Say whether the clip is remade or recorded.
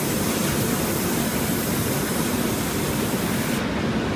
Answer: recorded